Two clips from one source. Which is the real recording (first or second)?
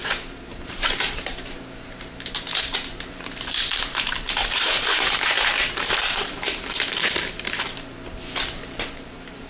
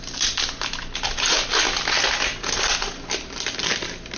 second